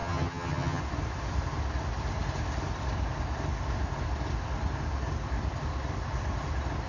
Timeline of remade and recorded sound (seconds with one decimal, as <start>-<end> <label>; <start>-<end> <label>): 0.0-0.8 remade; 0.8-6.9 recorded